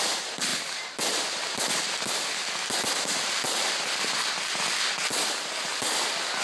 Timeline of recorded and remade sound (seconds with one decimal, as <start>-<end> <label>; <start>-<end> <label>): 0.0-6.4 recorded